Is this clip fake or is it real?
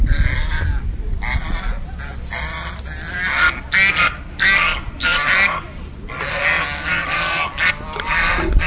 real